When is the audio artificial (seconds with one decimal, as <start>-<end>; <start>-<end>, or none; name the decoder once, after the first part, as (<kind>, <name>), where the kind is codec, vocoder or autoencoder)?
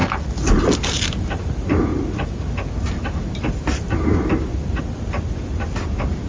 none